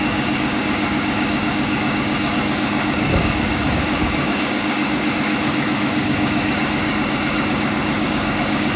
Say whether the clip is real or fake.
fake